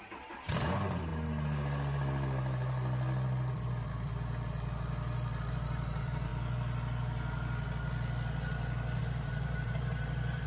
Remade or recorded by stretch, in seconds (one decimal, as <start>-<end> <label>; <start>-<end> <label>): 0.0-1.1 remade; 1.1-5.5 recorded; 5.5-6.3 remade; 6.3-9.0 recorded; 9.0-10.5 remade